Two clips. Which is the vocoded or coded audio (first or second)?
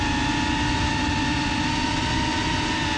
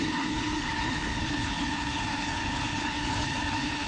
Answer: second